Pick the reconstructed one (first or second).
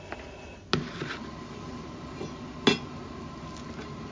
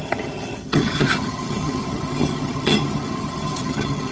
second